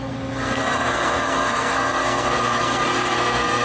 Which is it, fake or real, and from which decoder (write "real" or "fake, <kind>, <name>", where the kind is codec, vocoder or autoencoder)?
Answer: fake, codec, SNAC